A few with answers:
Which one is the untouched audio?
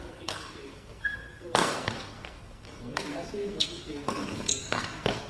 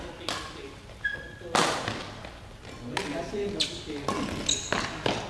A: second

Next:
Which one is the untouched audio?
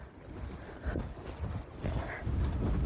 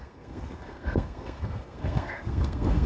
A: first